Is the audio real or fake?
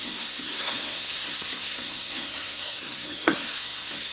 fake